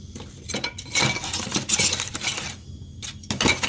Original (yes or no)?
yes